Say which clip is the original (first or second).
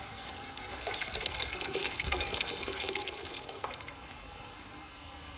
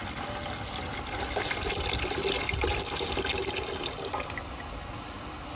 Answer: second